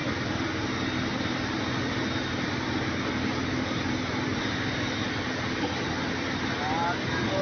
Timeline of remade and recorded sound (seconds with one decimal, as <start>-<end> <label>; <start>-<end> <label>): 0.0-7.4 recorded